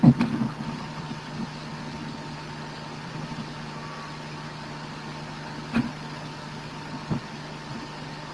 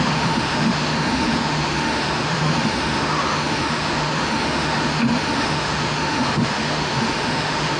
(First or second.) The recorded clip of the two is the first